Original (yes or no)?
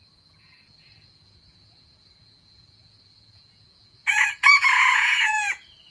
no